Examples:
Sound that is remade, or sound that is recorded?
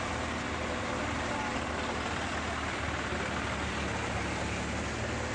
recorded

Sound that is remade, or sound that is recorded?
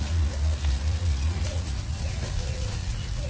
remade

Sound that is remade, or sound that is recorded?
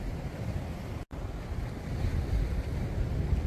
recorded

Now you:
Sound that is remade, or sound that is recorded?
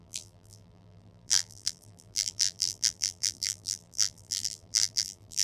remade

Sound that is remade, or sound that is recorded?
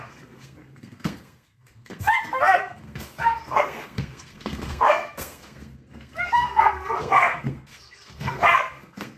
remade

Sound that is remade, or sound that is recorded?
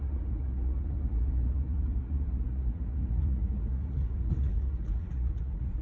remade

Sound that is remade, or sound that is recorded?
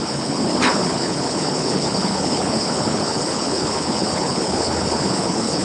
remade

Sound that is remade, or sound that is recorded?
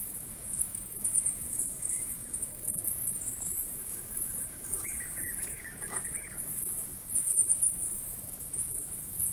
remade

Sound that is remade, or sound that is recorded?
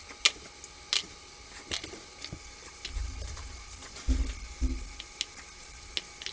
recorded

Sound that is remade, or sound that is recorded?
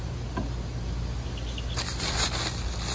recorded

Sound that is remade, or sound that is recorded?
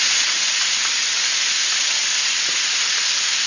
recorded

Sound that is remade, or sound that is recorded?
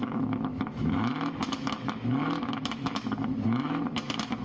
remade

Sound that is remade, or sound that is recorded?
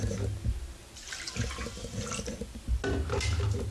recorded